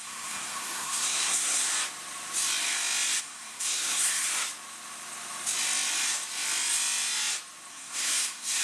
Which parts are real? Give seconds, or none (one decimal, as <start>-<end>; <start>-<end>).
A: 1.7-3.2; 4.3-7.7